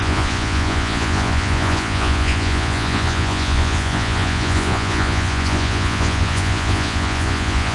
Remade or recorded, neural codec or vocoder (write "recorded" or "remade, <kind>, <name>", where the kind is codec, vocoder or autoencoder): remade, vocoder, Vocos